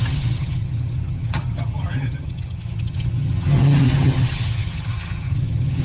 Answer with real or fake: fake